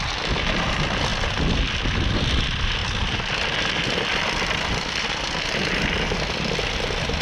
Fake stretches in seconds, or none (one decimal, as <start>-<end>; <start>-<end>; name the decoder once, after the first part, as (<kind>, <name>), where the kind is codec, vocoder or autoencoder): 1.1-1.8 (vocoder, BigVGAN v2)